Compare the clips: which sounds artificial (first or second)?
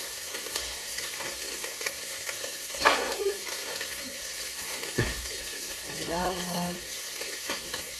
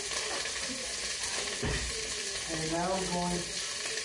first